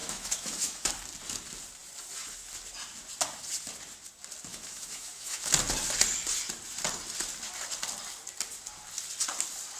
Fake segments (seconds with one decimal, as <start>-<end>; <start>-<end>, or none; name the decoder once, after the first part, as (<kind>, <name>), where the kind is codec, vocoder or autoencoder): 0.0-0.9 (autoencoder, DAC-VAE); 4.5-5.5